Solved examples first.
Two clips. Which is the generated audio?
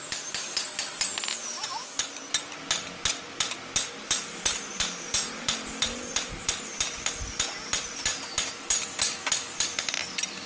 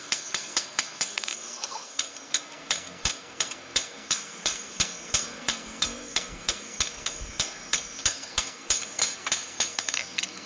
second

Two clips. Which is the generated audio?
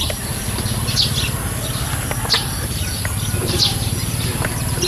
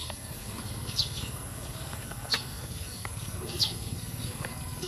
second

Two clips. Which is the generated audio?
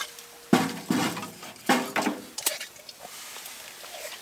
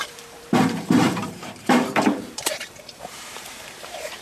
second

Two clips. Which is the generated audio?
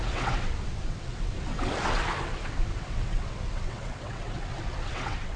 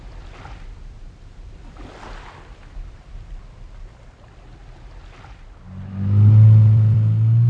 first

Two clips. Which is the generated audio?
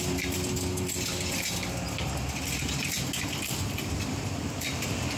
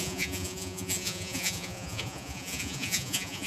second